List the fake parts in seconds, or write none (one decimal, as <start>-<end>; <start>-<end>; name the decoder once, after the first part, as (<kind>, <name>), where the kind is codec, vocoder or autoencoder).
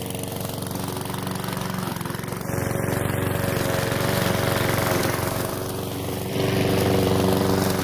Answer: 5.0-5.5 (codec, DAC)